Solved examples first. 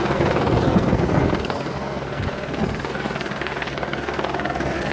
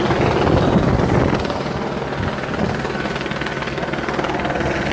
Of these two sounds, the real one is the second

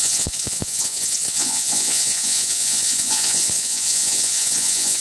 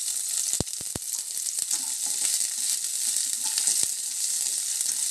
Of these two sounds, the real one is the second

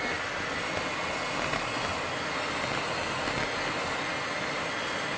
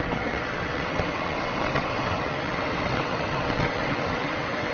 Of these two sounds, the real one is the first